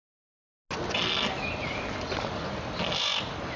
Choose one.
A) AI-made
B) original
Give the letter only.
B